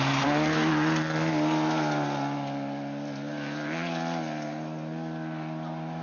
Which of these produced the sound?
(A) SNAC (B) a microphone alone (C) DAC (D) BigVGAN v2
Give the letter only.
B